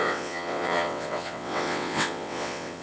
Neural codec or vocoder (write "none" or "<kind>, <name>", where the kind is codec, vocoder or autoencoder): vocoder, WaveNeXt